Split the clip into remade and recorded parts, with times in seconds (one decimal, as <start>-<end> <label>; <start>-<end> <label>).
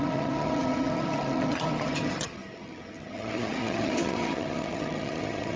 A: 0.0-5.6 remade